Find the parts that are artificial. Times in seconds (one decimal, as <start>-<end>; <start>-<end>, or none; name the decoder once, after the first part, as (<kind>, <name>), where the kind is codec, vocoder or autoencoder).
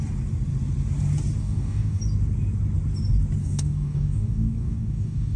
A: 1.4-2.0 (codec, DAC); 3.4-5.4